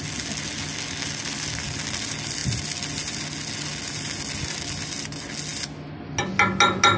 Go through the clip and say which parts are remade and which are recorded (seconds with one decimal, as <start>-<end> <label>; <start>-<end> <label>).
0.0-7.0 recorded

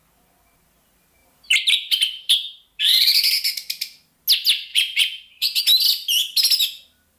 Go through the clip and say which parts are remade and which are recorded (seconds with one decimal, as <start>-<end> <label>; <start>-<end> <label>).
0.0-1.2 recorded; 1.2-3.3 remade; 3.3-4.7 recorded; 4.7-5.6 remade; 5.6-7.2 recorded